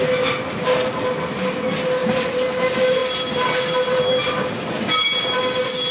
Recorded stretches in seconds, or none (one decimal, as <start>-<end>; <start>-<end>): 0.0-2.0; 2.6-5.9